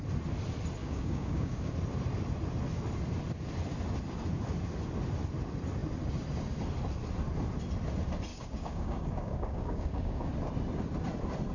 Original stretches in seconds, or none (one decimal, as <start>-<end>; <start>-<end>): 0.0-0.8; 1.7-8.3; 10.3-11.5